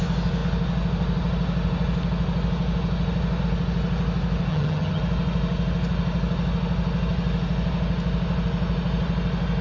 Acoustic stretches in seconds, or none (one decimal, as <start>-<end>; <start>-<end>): 0.0-4.5; 5.0-9.6